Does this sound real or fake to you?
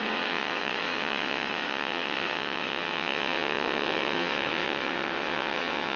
fake